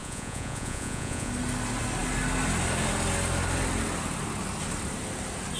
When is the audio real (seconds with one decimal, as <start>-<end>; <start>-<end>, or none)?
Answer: 1.3-5.6